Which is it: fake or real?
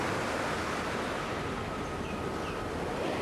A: real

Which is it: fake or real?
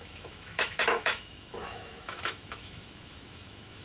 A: fake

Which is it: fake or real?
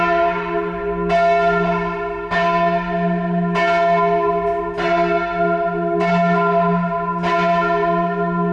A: real